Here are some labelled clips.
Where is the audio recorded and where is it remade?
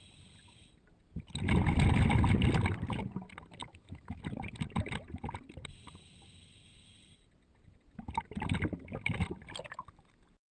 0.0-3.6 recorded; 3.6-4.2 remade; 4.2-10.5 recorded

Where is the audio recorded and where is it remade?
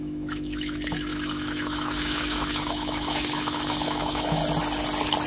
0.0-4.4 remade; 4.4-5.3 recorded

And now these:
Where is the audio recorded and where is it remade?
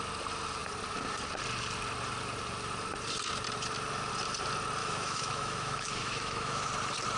0.0-4.8 recorded; 4.8-6.7 remade; 6.7-7.2 recorded